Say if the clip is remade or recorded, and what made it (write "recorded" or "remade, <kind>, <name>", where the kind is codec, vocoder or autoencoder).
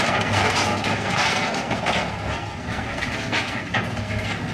remade, codec, SNAC